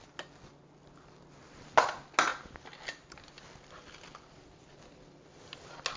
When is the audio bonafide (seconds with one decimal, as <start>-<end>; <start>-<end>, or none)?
0.0-6.0